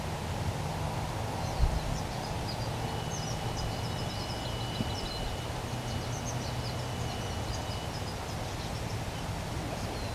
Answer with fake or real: real